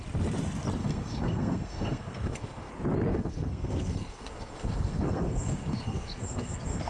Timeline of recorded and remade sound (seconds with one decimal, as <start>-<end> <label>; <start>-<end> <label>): 0.0-0.8 recorded; 0.8-2.7 remade; 2.7-3.1 recorded; 3.1-6.9 remade